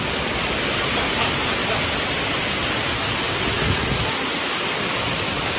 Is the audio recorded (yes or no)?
yes